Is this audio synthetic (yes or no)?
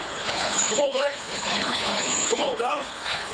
yes